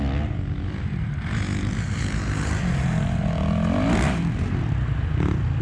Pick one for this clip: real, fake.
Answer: real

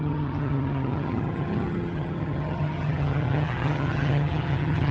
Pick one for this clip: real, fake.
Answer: fake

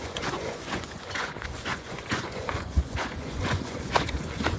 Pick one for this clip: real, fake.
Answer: fake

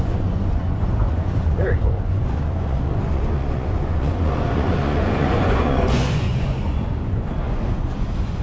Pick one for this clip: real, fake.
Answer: fake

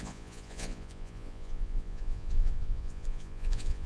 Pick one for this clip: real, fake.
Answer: fake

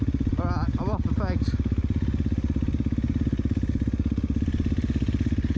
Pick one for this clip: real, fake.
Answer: real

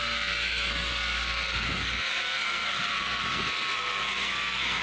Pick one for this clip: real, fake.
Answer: fake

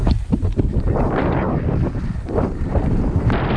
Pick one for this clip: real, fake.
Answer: fake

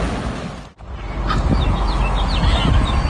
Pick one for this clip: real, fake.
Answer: real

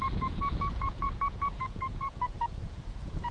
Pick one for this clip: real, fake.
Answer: fake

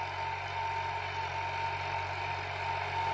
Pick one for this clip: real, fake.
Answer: real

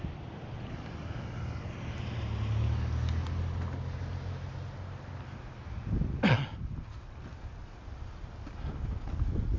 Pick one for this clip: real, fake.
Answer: real